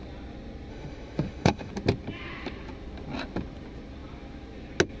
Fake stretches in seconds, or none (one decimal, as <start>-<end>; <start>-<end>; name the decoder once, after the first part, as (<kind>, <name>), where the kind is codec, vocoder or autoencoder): 0.7-1.7 (autoencoder, DAC-VAE)